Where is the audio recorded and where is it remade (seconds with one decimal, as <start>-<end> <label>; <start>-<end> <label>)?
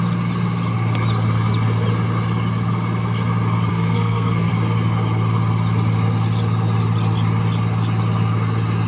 0.0-3.7 recorded; 3.7-4.5 remade; 4.5-8.9 recorded